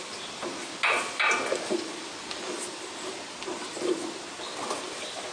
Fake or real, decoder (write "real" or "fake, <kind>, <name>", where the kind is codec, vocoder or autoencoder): real